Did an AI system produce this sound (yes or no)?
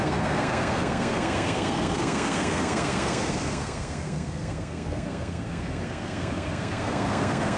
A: yes